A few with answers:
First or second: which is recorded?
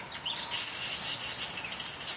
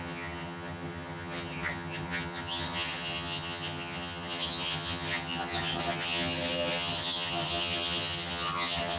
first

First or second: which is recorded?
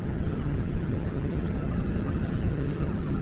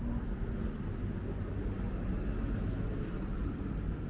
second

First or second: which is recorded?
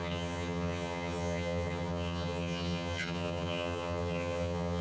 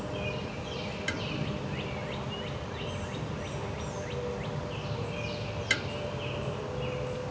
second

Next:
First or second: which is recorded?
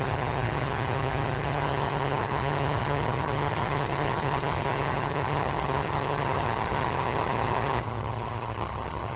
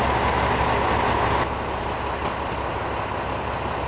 second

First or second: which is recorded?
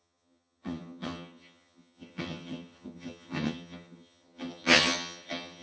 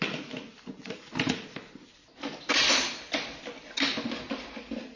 second